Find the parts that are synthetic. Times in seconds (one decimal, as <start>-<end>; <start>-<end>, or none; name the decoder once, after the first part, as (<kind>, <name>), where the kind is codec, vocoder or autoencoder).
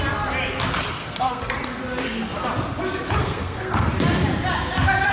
1.0-1.7 (codec, SNAC); 3.2-3.9